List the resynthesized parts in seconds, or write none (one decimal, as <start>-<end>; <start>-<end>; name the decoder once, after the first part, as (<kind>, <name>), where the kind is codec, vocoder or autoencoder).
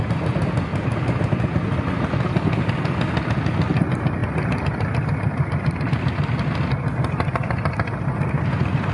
none